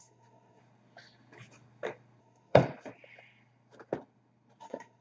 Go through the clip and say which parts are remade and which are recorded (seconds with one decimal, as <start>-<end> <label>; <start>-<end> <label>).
0.0-0.6 remade; 0.6-2.2 recorded; 2.2-2.6 remade; 2.6-4.6 recorded; 4.6-5.0 remade